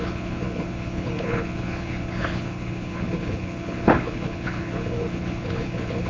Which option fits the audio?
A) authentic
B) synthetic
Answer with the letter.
B